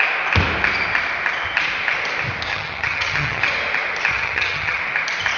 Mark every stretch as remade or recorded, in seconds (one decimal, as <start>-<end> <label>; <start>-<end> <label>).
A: 0.0-2.5 recorded; 2.5-3.4 remade; 3.4-4.1 recorded; 4.1-4.8 remade; 4.8-5.4 recorded